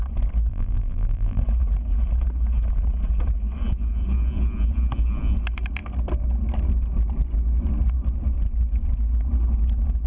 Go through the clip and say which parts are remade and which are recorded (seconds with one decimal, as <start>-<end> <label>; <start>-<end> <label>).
0.0-0.5 recorded; 0.5-1.4 remade; 1.4-10.1 recorded

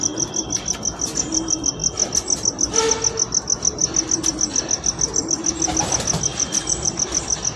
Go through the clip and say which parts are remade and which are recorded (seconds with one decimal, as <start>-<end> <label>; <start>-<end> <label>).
0.0-6.3 recorded; 6.3-7.6 remade

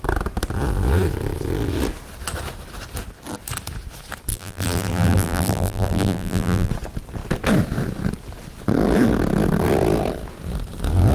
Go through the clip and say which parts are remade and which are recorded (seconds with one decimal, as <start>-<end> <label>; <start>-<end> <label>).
0.0-4.3 recorded; 4.3-6.7 remade; 6.7-11.1 recorded

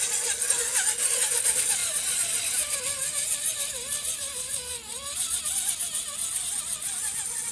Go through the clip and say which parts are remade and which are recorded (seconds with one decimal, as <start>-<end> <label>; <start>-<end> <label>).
0.0-1.8 recorded; 1.8-2.8 remade; 2.8-4.0 recorded; 4.0-4.5 remade; 4.5-7.5 recorded

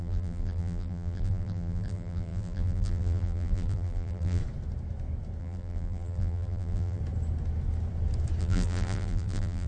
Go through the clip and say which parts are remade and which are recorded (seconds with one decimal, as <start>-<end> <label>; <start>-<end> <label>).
0.0-4.4 remade; 4.4-5.4 recorded; 5.4-7.0 remade; 7.0-8.4 recorded; 8.4-9.7 remade

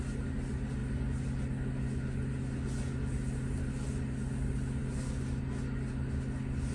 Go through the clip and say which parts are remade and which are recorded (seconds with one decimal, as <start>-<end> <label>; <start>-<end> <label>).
0.0-6.7 recorded

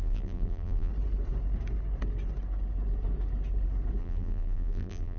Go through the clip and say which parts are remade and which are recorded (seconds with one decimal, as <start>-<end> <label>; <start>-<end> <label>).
0.0-0.9 remade; 0.9-4.0 recorded; 4.0-5.2 remade